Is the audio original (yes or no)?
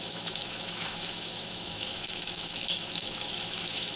no